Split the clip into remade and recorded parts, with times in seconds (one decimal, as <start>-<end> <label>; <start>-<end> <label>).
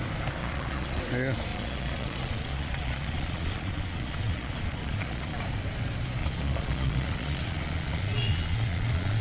0.0-0.4 recorded; 0.4-1.0 remade; 1.0-1.5 recorded; 1.5-5.4 remade; 5.4-6.2 recorded; 6.2-9.2 remade